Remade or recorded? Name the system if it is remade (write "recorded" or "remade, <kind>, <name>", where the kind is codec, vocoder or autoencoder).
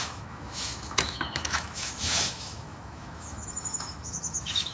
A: remade, autoencoder, DAC-VAE